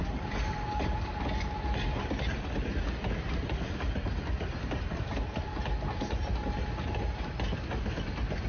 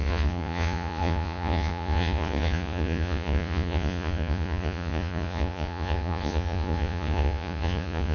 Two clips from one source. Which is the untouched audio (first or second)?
first